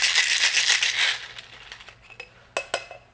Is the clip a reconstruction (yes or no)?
no